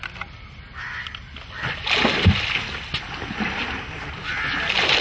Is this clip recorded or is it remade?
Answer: recorded